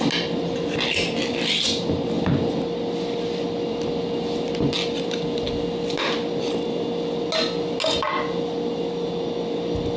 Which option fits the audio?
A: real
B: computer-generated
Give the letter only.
A